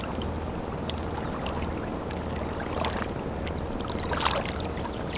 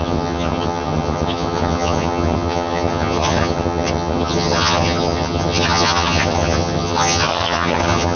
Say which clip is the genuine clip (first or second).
first